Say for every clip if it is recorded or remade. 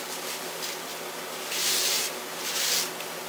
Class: recorded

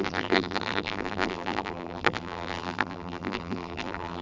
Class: remade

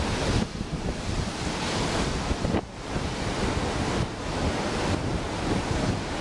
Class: recorded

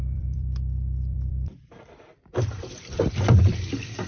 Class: remade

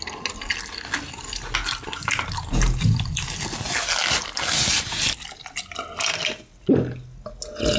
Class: recorded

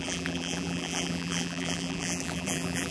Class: remade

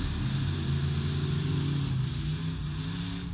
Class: recorded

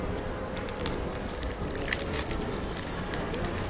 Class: recorded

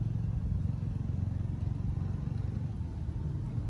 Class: recorded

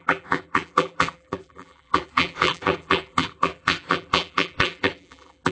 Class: remade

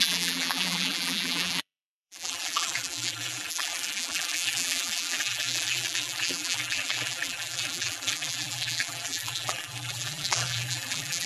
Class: remade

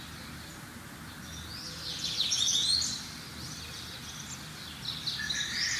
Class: recorded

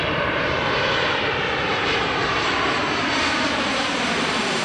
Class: remade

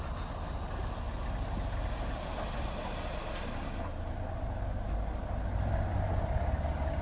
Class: recorded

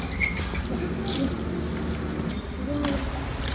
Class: recorded